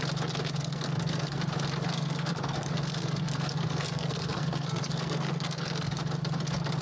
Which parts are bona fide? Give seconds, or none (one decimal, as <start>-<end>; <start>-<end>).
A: 0.0-0.6; 1.4-1.9; 6.0-6.8